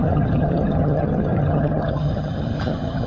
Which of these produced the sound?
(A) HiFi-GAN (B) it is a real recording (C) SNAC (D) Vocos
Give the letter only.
A